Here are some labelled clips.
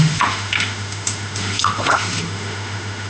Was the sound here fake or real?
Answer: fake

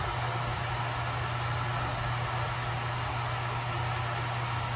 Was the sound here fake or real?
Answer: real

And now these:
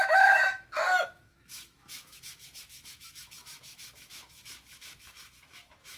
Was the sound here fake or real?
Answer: fake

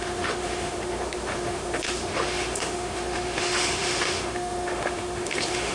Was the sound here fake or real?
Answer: fake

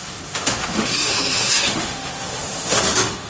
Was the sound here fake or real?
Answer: fake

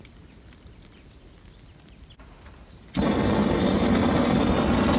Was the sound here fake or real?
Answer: real